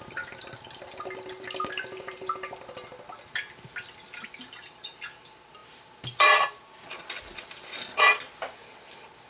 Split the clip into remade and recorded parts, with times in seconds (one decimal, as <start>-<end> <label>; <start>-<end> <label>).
0.0-9.3 recorded